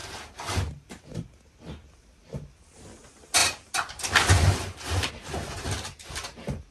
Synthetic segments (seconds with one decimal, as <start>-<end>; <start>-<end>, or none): none